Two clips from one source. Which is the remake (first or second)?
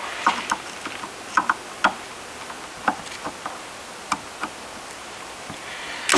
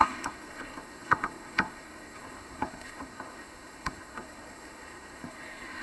second